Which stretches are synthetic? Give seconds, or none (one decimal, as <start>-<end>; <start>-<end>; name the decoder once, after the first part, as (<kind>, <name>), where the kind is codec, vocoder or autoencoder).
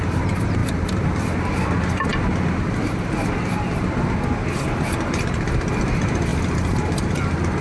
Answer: 0.6-1.4 (vocoder, BigVGAN v2)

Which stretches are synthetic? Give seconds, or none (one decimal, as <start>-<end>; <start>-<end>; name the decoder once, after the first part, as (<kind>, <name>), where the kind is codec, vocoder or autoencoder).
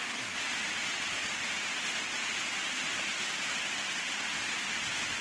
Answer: none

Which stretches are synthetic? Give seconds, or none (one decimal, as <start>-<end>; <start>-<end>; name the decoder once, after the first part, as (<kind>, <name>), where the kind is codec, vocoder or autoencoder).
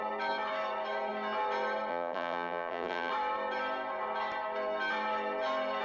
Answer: 1.9-3.1 (vocoder, BigVGAN v2)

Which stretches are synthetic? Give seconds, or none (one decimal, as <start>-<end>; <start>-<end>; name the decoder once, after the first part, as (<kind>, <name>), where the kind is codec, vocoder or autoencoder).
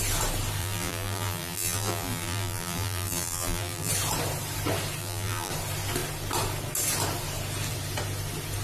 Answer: 0.6-3.9 (vocoder, BigVGAN v2); 5.0-5.5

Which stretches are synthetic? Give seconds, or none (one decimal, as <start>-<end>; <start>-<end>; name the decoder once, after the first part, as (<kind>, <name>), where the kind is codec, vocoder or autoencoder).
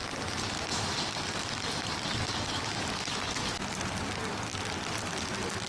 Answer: 2.8-5.7 (vocoder, BigVGAN v2)